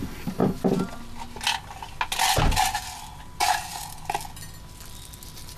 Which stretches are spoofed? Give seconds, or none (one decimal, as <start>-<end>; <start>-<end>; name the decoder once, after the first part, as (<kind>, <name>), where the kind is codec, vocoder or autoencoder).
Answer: none